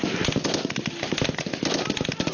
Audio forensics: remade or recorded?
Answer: recorded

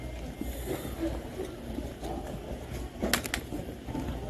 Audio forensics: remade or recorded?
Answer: recorded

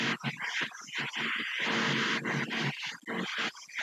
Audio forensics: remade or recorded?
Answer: recorded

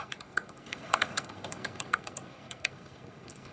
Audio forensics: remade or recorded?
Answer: remade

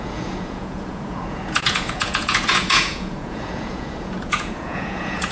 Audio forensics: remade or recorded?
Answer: remade